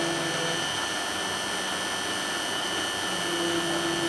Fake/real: real